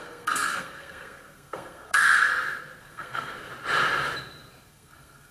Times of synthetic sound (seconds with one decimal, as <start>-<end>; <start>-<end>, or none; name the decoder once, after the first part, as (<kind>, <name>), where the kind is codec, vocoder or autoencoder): 0.0-2.3 (codec, SNAC); 2.8-3.5; 4.7-5.3